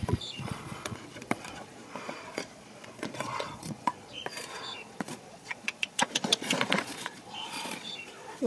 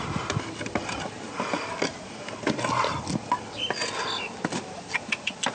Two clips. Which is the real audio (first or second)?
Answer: second